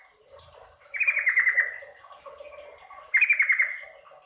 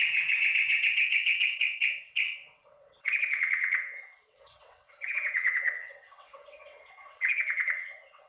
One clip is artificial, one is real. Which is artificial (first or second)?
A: second